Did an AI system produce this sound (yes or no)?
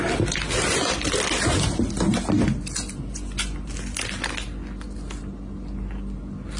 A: no